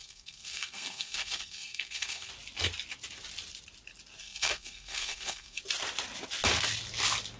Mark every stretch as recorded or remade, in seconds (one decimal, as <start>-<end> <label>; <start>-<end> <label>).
0.0-2.3 remade; 2.3-4.2 recorded; 4.2-5.6 remade; 5.6-7.4 recorded